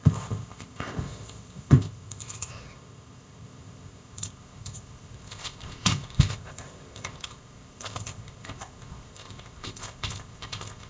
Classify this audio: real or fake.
fake